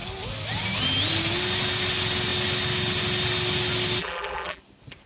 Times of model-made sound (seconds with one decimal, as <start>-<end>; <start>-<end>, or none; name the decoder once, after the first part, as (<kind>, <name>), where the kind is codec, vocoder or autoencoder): 4.0-4.6 (vocoder, BigVGAN v2)